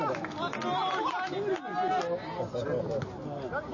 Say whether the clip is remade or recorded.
recorded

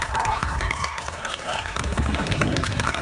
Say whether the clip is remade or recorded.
remade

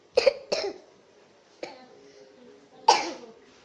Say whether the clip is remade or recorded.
recorded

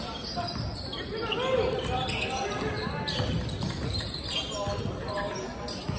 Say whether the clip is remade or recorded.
recorded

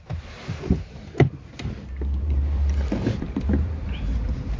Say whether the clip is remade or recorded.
remade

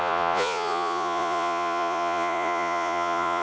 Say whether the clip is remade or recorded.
remade